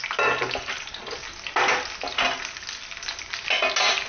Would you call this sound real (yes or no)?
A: yes